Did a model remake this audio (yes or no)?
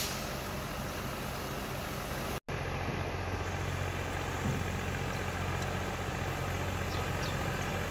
no